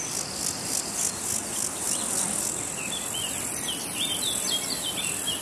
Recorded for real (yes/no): yes